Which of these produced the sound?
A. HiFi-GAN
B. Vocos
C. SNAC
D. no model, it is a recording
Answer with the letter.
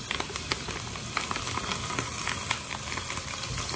D